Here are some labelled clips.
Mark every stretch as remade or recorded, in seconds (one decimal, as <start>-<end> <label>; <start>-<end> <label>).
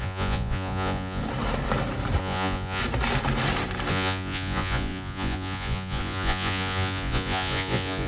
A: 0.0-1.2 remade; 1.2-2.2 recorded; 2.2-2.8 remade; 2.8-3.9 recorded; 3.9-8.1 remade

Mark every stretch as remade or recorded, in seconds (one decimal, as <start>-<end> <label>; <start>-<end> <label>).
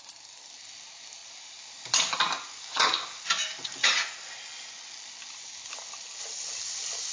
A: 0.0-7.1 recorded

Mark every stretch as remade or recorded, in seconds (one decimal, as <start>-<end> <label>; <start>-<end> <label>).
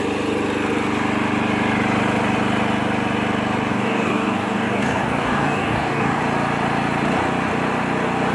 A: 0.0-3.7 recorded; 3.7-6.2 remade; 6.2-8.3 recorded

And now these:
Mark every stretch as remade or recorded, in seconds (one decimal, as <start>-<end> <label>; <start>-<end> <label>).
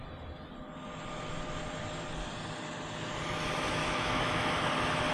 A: 0.0-3.8 recorded; 3.8-4.6 remade; 4.6-5.1 recorded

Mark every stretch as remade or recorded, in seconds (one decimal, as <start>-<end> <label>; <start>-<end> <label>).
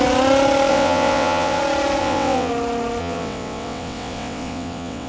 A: 0.0-0.7 recorded; 0.7-1.6 remade; 1.6-2.0 recorded; 2.0-2.5 remade; 2.5-3.0 recorded; 3.0-5.1 remade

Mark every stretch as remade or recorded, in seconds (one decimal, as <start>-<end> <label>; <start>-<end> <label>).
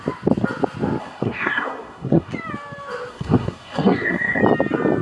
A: 0.0-1.0 recorded; 1.0-2.3 remade; 2.3-3.1 recorded; 3.1-4.4 remade; 4.4-5.0 recorded